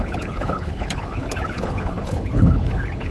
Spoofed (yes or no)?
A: yes